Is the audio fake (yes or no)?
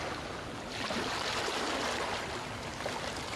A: no